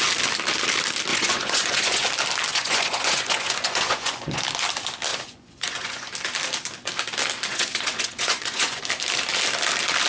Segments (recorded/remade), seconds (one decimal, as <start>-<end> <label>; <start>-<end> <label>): 0.0-1.1 recorded; 1.1-2.1 remade; 2.1-2.5 recorded; 2.5-4.4 remade; 4.4-5.1 recorded; 5.1-6.1 remade; 6.1-7.5 recorded; 7.5-8.8 remade; 8.8-10.1 recorded